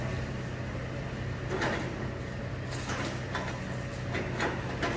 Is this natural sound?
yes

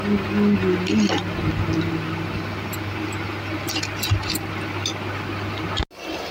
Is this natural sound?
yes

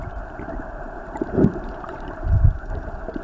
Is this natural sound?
no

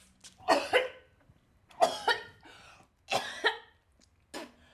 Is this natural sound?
yes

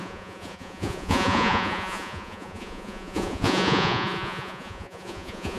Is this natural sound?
no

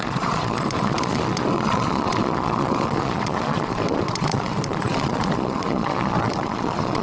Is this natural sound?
no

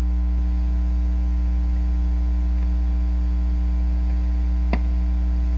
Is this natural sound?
yes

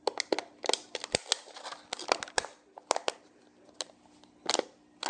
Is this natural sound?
yes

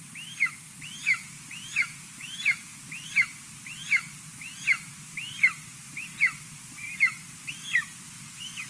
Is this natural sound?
yes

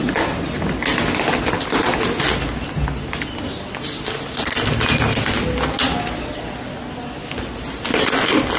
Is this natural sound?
yes